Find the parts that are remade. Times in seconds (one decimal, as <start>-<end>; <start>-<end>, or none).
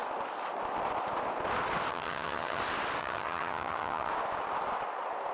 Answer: 1.9-2.6; 3.0-4.1